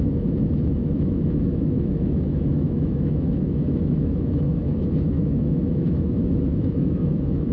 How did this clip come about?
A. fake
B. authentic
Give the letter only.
A